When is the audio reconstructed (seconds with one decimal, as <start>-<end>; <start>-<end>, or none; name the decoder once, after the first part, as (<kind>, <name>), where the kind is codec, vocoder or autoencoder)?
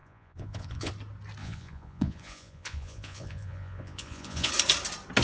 0.0-0.9 (vocoder, Vocos); 1.4-4.5